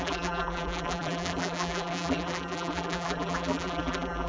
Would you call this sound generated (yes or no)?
yes